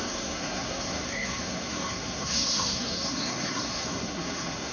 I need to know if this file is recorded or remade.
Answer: remade